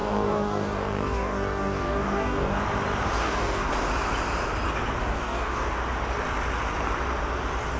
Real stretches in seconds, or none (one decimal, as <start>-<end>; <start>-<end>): 2.6-3.2; 3.7-5.0; 5.7-7.8

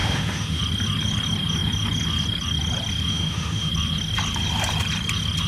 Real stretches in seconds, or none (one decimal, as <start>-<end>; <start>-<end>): 0.6-3.1; 3.7-5.5

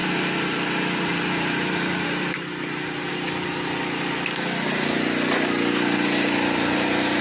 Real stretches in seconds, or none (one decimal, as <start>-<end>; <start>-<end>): 3.1-7.2

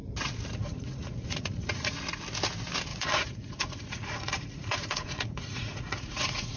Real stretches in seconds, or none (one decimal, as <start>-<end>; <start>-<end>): 0.0-0.6; 2.0-2.9

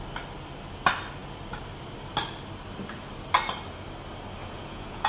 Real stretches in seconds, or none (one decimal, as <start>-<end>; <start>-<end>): 0.0-4.4

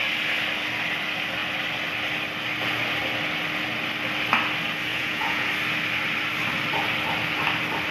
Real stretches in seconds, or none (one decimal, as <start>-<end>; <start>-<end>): 0.0-4.9; 5.5-7.9